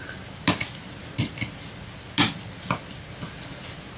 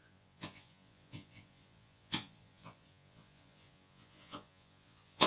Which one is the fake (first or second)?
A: second